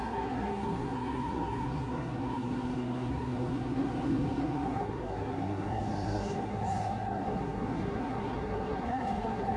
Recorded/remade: remade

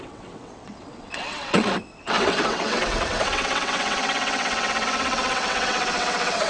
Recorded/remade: remade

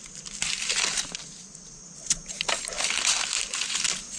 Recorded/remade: recorded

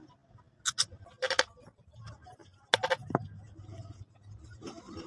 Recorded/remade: recorded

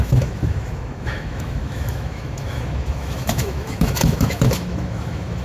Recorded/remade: remade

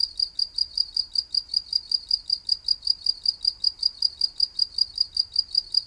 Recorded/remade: recorded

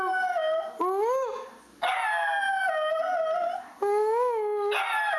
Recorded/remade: recorded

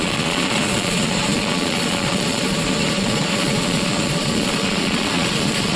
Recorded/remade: remade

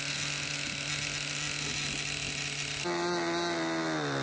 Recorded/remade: recorded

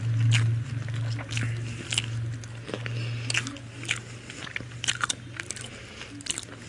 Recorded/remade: recorded